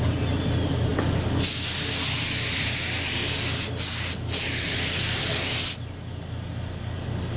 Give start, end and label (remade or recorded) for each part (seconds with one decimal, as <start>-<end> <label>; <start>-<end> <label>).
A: 0.0-7.4 recorded